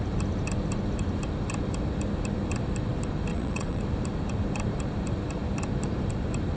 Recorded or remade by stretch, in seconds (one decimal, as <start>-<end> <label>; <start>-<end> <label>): 0.0-3.3 recorded; 3.3-3.8 remade; 3.8-6.6 recorded

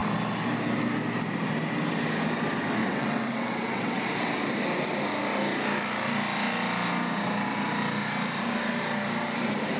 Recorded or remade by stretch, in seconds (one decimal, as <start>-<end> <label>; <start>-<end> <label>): 0.0-2.8 recorded; 2.8-4.0 remade; 4.0-9.8 recorded

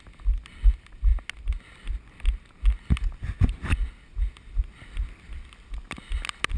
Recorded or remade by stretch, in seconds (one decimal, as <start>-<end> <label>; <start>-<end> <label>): 0.0-6.6 recorded

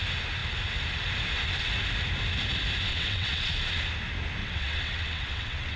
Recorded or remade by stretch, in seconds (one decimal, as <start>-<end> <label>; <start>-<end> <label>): 0.0-2.9 recorded; 2.9-3.5 remade; 3.5-4.4 recorded; 4.4-5.8 remade

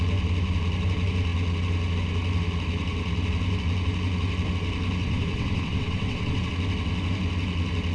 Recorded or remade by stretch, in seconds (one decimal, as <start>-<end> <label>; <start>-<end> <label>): 0.0-5.0 recorded; 5.0-6.5 remade; 6.5-7.9 recorded